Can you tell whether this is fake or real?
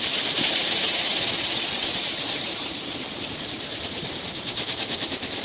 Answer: fake